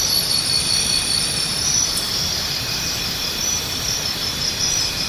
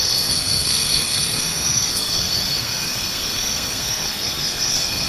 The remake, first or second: second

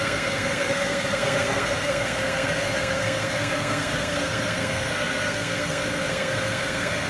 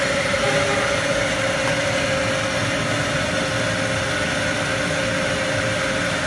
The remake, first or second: first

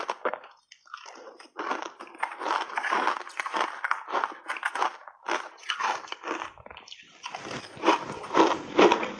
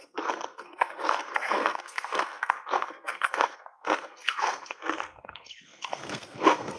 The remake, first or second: second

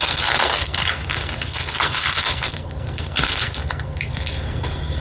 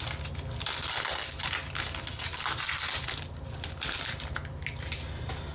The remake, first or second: first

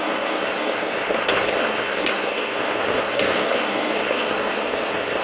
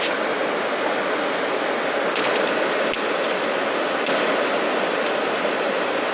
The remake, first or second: first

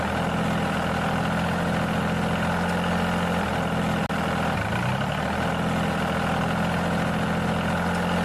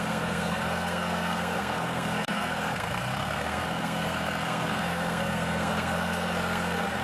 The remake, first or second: second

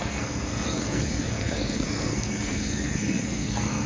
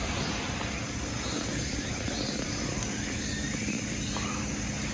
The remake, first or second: first